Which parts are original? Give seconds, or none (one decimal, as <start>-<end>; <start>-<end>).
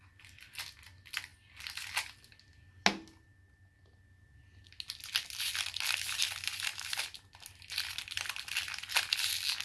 0.0-9.6